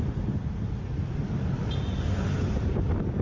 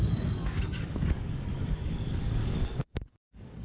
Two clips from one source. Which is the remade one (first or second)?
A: second